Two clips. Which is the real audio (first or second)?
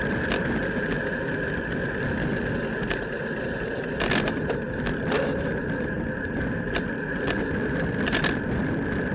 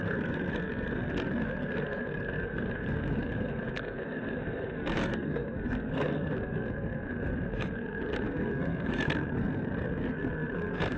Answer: first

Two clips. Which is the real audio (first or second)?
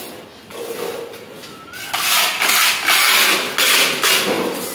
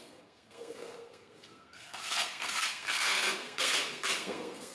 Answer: first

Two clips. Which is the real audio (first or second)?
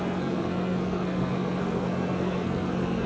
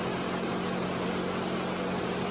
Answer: second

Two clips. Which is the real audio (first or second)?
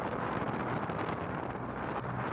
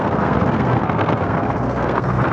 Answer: first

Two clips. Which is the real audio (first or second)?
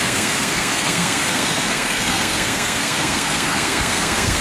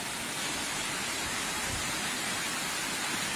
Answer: second